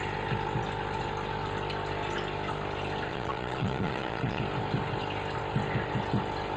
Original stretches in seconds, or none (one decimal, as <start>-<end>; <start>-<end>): 0.0-3.1; 4.4-6.6